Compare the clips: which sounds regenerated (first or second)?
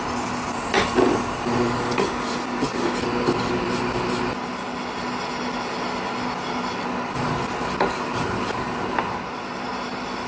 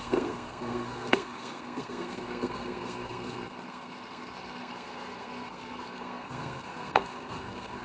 second